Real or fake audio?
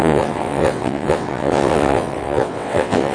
fake